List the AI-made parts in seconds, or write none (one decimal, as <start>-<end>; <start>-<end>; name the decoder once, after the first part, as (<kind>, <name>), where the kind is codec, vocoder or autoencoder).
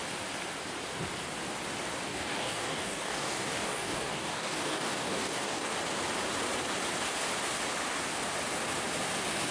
2.1-5.8 (codec, DAC)